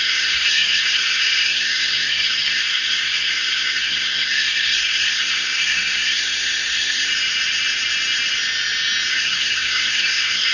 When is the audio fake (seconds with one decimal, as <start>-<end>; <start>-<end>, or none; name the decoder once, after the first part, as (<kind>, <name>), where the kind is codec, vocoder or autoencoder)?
0.0-7.1 (codec, SNAC); 9.1-10.5